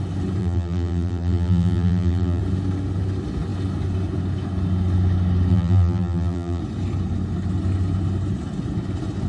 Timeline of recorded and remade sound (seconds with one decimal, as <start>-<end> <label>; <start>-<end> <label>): 0.0-0.4 recorded; 0.4-2.4 remade; 2.4-5.5 recorded; 5.5-6.6 remade; 6.6-9.3 recorded